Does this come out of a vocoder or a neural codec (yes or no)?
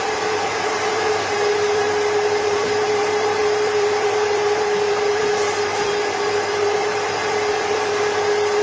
yes